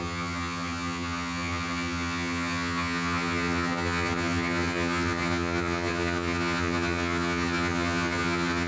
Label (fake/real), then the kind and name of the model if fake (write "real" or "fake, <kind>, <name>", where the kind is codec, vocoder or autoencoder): fake, vocoder, HiFi-GAN